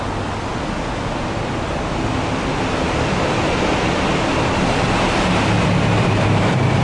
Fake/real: real